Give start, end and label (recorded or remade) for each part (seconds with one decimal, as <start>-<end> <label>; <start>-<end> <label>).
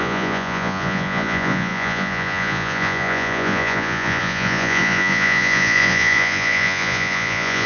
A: 0.0-7.7 remade